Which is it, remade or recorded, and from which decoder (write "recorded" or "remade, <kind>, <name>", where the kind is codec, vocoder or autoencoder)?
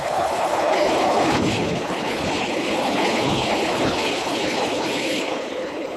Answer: remade, codec, HILCodec